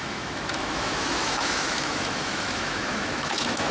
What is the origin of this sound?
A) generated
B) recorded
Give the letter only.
A